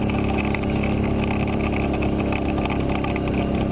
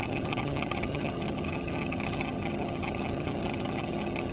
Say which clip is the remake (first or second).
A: second